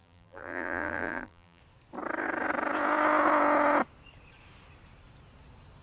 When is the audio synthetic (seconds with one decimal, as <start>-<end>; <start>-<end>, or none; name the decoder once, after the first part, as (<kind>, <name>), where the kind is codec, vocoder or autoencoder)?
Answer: 0.0-1.6 (vocoder, BigVGAN v2)